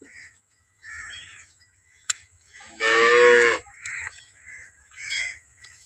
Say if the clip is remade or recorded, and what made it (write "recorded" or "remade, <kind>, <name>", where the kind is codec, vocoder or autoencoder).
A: remade, autoencoder, DAC-VAE